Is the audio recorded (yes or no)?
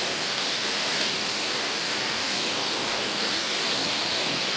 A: no